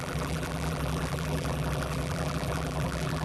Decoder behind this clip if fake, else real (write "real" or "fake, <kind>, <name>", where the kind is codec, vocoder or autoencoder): fake, vocoder, BigVGAN v2